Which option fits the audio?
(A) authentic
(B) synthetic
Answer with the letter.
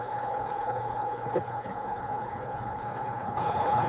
B